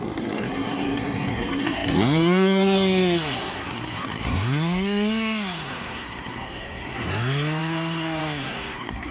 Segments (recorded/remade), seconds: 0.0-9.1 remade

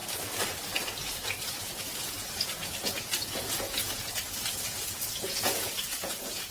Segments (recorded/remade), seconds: 0.0-1.0 recorded; 1.0-6.5 remade

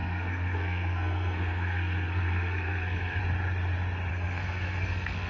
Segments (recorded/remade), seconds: 0.0-3.2 remade; 3.2-4.1 recorded; 4.1-5.3 remade